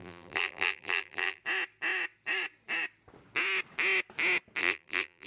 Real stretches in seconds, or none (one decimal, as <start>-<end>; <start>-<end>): 1.4-4.6